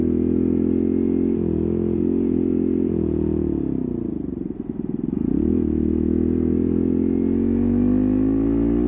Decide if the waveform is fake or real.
real